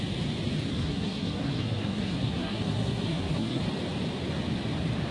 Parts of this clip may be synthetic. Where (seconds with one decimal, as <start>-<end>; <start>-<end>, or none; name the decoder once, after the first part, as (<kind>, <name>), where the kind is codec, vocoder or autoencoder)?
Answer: 0.7-3.6 (codec, SNAC)